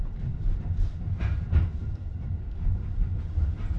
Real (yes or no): yes